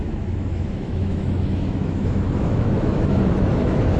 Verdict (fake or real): fake